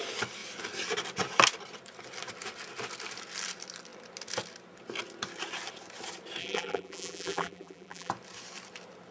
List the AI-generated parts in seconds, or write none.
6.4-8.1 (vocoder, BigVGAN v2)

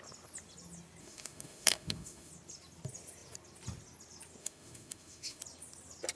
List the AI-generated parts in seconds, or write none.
1.0-2.3 (autoencoder, DAC-VAE); 4.4-5.4

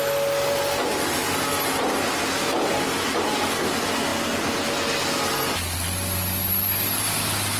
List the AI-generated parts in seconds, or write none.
none

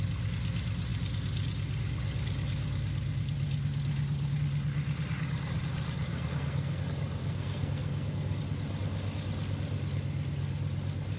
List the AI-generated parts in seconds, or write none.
6.1-6.8 (codec, SNAC); 7.2-8.4